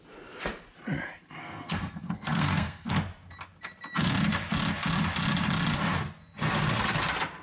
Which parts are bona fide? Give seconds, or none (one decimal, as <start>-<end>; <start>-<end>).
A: 0.0-1.4; 2.9-7.4